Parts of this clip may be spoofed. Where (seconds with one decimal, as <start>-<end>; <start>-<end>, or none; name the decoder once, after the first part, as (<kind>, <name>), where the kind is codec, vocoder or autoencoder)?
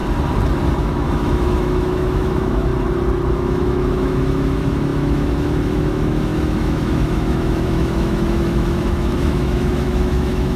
0.8-2.7 (autoencoder, DAC-VAE); 3.3-10.6